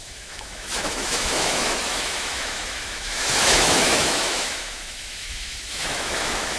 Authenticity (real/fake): fake